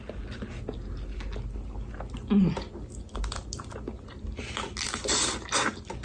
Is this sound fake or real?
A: real